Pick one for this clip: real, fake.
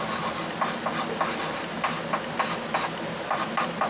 real